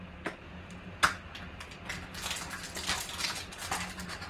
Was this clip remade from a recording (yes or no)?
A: no